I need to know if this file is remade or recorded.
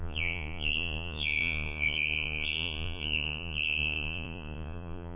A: remade